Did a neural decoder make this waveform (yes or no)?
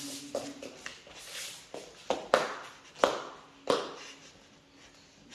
no